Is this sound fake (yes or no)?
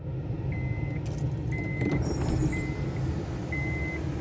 no